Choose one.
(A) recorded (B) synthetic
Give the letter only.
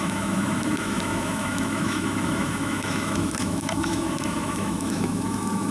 B